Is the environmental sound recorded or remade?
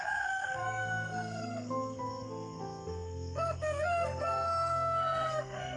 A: remade